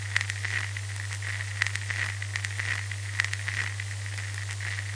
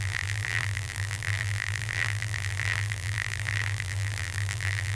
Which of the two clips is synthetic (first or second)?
second